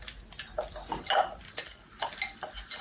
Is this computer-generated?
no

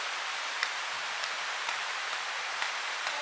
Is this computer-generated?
yes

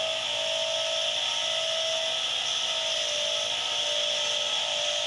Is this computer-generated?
no